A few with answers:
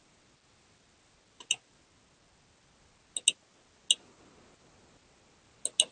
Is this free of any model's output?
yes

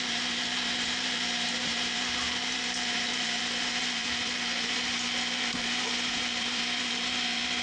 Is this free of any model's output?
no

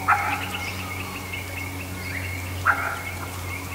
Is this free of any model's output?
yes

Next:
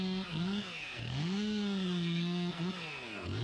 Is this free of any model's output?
no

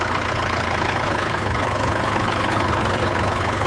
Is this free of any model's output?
no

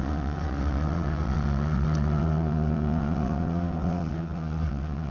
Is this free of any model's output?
no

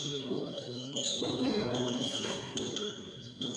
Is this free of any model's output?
no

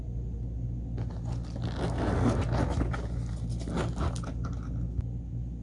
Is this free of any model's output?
yes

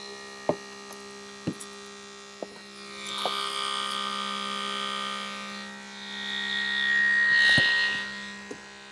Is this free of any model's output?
yes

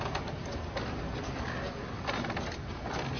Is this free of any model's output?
yes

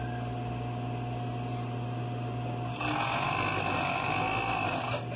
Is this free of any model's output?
yes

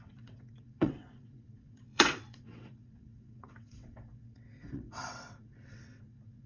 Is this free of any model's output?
no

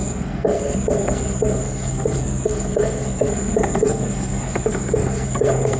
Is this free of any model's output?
no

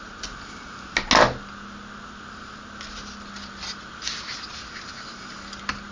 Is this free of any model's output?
yes